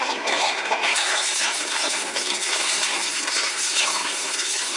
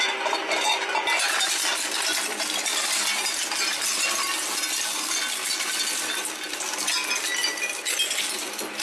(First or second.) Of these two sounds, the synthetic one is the first